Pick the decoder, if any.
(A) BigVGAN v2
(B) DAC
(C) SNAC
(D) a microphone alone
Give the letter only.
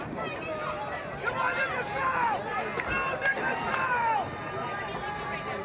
A